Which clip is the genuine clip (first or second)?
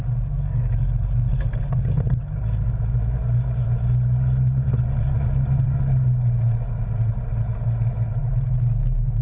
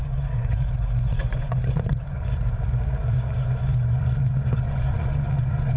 first